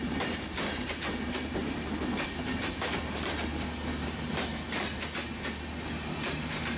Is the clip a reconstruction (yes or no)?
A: no